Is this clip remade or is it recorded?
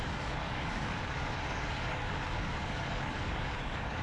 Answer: remade